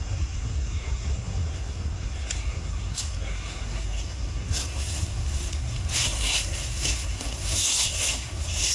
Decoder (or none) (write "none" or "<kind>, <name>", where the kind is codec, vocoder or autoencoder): codec, SNAC